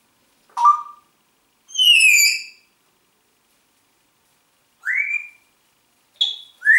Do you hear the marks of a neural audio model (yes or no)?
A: no